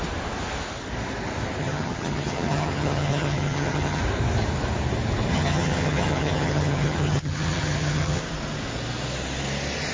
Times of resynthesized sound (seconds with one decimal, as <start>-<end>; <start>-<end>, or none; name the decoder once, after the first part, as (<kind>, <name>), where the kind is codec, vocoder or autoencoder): 1.6-4.0 (vocoder, HiFi-GAN); 5.3-8.2